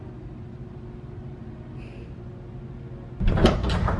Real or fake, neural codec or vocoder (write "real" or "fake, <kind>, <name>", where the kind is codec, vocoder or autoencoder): real